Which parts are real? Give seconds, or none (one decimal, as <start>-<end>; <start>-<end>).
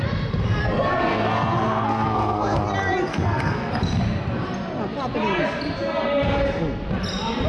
0.0-0.6; 2.6-3.1; 3.7-7.5